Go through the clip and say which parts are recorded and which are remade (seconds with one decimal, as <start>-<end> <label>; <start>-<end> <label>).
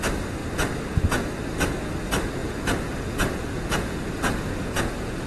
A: 0.0-2.4 recorded; 2.4-5.3 remade